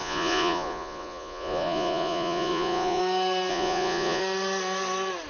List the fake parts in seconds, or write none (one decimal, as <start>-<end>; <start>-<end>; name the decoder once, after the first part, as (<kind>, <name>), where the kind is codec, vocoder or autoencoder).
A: 0.0-3.0 (vocoder, Vocos); 3.5-4.2